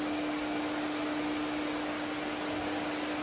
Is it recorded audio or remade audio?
recorded